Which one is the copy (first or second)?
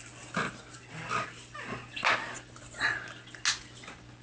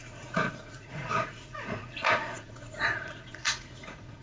second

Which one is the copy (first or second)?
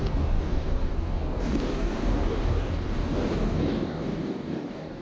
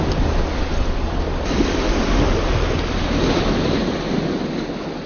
first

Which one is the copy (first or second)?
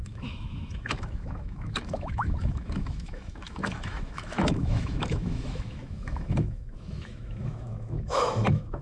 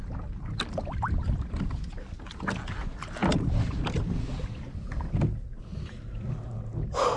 first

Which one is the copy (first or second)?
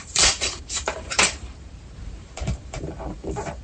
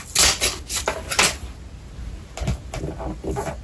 first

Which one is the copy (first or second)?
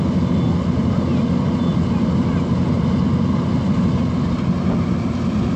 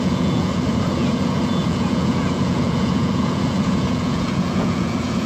second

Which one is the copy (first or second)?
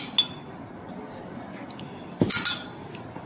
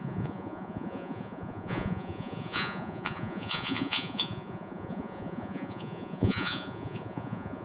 second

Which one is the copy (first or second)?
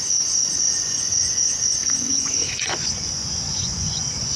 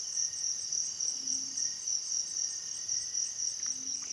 first